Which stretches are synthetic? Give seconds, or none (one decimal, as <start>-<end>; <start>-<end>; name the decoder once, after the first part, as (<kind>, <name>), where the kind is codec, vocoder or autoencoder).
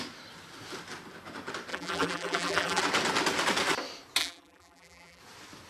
1.7-2.8 (vocoder, BigVGAN v2); 4.2-5.2